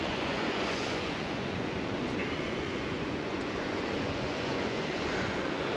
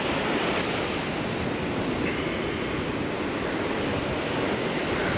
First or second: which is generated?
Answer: first